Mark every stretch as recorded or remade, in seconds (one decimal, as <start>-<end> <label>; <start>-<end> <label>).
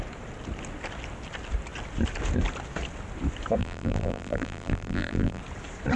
0.0-3.6 recorded; 3.6-5.4 remade; 5.4-6.0 recorded